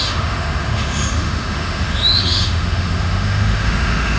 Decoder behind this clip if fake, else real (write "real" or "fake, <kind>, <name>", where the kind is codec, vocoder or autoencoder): fake, autoencoder, DAC-VAE